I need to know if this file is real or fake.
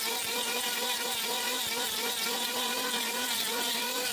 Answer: real